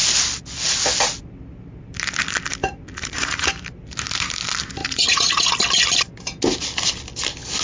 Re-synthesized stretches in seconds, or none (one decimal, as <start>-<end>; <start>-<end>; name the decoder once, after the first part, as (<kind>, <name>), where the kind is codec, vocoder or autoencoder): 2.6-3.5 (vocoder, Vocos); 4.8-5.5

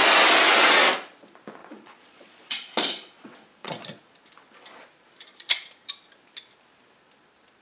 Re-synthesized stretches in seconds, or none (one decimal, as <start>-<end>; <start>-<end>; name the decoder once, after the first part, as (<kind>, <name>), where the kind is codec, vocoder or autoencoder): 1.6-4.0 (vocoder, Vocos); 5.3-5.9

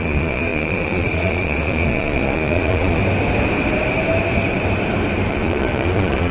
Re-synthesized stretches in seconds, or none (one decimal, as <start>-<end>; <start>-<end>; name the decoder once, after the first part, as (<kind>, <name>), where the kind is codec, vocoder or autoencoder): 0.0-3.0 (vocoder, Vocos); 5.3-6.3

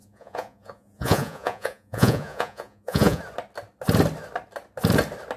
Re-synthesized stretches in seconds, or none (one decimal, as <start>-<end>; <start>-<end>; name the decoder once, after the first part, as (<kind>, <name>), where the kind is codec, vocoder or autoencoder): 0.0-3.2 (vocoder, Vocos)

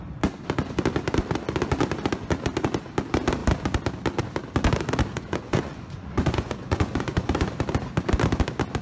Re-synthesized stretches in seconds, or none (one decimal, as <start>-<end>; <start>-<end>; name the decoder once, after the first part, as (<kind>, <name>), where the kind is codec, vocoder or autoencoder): 5.1-7.5 (vocoder, Vocos)